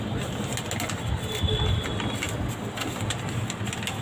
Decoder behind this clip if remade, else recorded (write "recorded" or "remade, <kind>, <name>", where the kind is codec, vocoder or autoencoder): recorded